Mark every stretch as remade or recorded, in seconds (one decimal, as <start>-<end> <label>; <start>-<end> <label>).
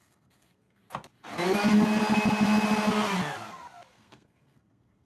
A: 0.0-0.8 remade; 0.8-3.9 recorded; 3.9-5.1 remade